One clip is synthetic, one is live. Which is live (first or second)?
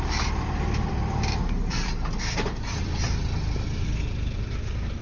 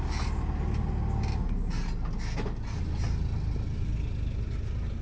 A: second